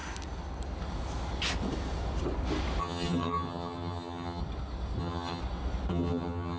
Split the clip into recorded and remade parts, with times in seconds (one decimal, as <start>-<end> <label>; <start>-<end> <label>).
0.0-2.8 recorded; 2.8-4.4 remade; 4.4-5.0 recorded; 5.0-5.4 remade; 5.4-5.9 recorded; 5.9-6.6 remade